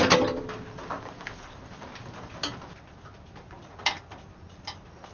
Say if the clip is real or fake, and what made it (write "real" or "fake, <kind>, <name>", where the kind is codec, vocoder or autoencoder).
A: real